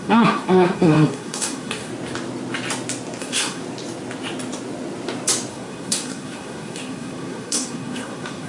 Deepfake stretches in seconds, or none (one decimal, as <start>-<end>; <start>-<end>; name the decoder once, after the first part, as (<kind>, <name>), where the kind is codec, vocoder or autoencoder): 0.0-1.9 (codec, SNAC); 3.2-3.6; 5.5-8.5